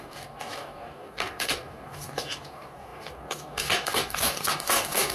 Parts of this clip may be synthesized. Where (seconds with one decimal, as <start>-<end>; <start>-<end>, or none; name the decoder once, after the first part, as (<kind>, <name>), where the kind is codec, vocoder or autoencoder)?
0.0-5.1 (codec, DAC)